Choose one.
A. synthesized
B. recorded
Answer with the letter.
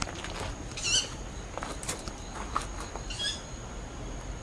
B